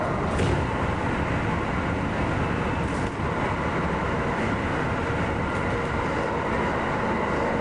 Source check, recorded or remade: recorded